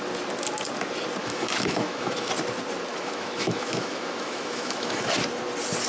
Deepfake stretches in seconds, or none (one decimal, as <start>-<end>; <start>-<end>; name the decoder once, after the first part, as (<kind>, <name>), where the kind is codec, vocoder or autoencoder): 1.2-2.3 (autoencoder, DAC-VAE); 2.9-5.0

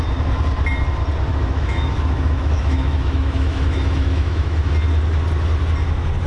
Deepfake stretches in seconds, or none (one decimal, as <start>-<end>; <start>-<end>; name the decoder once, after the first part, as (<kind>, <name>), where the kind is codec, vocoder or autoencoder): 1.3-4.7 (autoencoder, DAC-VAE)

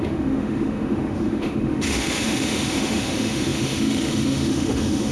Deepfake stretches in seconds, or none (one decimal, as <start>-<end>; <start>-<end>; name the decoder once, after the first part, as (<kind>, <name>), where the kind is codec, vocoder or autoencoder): 0.0-5.1 (autoencoder, DAC-VAE)

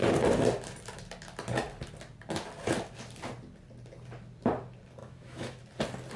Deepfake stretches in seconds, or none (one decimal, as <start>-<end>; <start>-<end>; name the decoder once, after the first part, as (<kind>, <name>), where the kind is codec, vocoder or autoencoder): 5.0-5.6 (autoencoder, DAC-VAE)

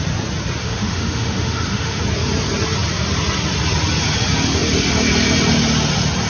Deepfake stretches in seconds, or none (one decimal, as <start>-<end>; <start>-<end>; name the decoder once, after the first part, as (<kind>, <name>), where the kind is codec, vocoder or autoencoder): 0.6-2.0 (autoencoder, DAC-VAE)

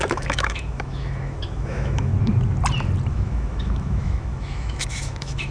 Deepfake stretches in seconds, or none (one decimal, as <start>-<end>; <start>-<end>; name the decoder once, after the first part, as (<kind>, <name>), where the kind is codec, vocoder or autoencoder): 0.0-2.1 (autoencoder, DAC-VAE); 3.1-5.5

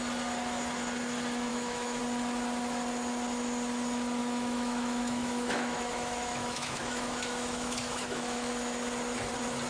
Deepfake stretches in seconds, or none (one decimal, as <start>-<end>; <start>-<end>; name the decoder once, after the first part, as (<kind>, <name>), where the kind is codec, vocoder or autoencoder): 1.5-2.0 (autoencoder, DAC-VAE); 4.2-8.5

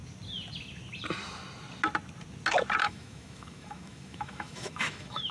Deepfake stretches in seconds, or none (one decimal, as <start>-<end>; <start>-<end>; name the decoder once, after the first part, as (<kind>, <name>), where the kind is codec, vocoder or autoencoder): 2.8-5.3 (autoencoder, DAC-VAE)